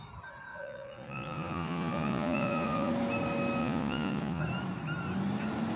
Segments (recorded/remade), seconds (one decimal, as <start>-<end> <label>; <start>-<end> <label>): 0.0-0.5 recorded; 0.5-2.9 remade; 2.9-3.6 recorded; 3.6-4.4 remade; 4.4-5.8 recorded

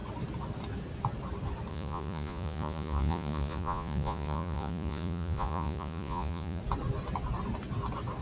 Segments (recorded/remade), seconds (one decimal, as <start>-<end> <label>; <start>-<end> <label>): 0.0-1.7 recorded; 1.7-6.6 remade; 6.6-8.2 recorded

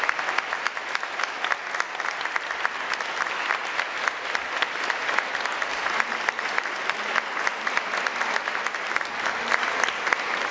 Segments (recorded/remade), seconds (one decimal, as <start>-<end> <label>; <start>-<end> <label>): 0.0-10.5 recorded

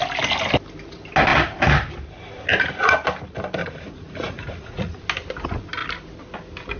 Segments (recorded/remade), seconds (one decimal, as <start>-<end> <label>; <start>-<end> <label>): 0.0-3.6 recorded; 3.6-5.0 remade; 5.0-6.8 recorded

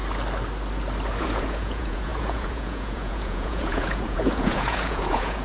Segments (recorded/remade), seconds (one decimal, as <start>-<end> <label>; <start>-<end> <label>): 0.0-1.2 recorded; 1.2-5.4 remade

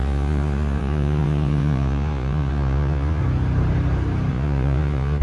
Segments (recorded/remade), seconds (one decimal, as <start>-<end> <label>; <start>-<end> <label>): 0.0-3.2 remade; 3.2-4.3 recorded; 4.3-5.2 remade

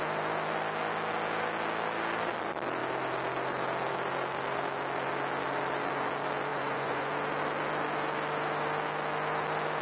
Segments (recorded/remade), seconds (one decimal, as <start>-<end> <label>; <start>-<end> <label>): 0.0-6.5 recorded; 6.5-7.1 remade; 7.1-9.8 recorded

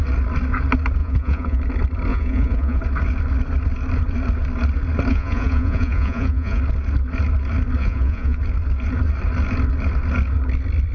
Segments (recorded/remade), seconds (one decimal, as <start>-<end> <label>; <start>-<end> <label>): 0.0-1.0 recorded; 1.0-1.6 remade; 1.6-2.1 recorded; 2.1-2.8 remade; 2.8-5.1 recorded; 5.1-6.6 remade; 6.6-7.8 recorded; 7.8-8.4 remade; 8.4-10.9 recorded